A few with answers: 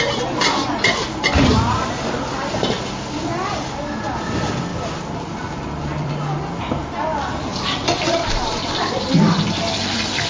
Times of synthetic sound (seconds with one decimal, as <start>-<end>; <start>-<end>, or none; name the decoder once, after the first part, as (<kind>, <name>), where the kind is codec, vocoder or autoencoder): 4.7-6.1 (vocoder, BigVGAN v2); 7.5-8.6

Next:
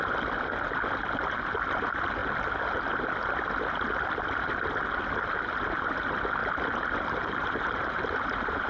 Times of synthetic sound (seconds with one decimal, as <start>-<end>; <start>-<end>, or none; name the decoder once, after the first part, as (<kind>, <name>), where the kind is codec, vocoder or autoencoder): 6.4-8.7 (vocoder, BigVGAN v2)

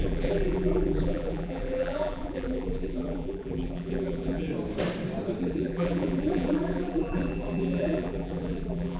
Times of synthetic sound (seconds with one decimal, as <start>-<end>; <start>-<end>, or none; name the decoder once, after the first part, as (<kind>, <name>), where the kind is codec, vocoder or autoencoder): 0.0-4.5 (vocoder, BigVGAN v2); 5.4-9.0

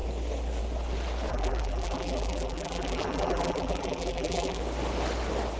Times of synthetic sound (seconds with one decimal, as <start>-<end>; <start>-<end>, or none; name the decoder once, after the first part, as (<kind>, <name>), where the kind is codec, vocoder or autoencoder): 1.3-4.6 (vocoder, BigVGAN v2)

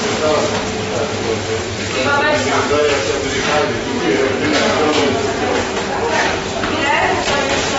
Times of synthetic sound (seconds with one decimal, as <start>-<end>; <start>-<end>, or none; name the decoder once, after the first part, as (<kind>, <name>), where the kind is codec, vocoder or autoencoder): 2.1-2.8 (vocoder, BigVGAN v2); 7.1-7.8

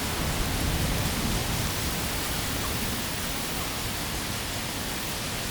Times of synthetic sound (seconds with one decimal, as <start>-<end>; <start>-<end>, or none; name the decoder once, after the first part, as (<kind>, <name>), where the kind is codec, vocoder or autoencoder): none